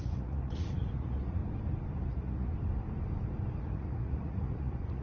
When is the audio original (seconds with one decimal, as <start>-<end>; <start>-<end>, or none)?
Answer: 1.4-2.1; 2.5-3.6